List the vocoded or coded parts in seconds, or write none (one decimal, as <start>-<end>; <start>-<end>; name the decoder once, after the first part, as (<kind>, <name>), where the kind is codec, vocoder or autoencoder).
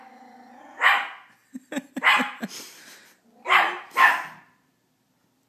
none